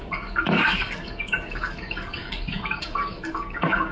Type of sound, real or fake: fake